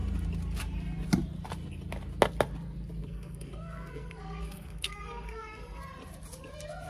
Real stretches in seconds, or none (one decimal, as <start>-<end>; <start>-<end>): 0.0-3.0; 5.8-6.9